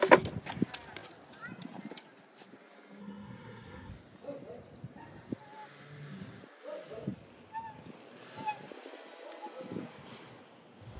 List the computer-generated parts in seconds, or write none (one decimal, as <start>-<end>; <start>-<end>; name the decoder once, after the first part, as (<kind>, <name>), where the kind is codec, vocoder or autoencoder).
3.0-3.9 (codec, SNAC)